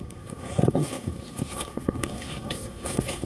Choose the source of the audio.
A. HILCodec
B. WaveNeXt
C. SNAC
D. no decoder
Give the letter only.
C